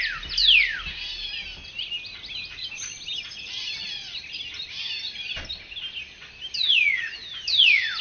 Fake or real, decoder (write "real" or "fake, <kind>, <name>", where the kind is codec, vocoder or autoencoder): real